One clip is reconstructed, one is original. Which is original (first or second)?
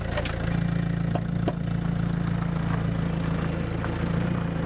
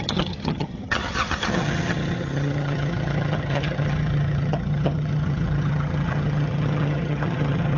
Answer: first